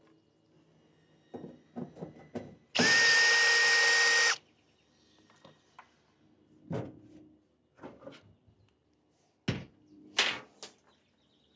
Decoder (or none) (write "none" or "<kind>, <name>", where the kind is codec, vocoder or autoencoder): none